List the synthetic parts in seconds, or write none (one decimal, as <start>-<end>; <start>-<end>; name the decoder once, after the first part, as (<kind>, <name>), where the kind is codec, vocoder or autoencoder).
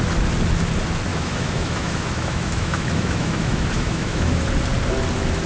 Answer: 1.1-4.4 (autoencoder, DAC-VAE)